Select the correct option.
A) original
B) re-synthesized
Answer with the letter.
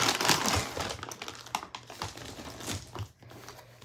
A